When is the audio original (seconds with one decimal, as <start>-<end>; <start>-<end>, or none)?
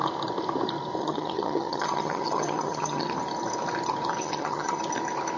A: 0.0-1.0; 3.1-4.2; 4.8-5.4